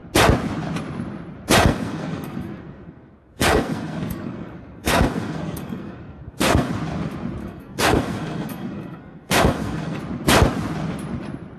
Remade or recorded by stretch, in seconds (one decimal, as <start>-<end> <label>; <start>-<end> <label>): 0.0-1.6 recorded; 1.6-6.7 remade; 6.7-7.4 recorded; 7.4-10.0 remade; 10.0-11.6 recorded